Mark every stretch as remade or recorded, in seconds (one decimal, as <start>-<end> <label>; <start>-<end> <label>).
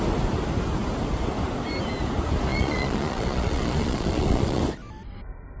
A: 0.0-2.5 recorded; 2.5-4.6 remade; 4.6-5.6 recorded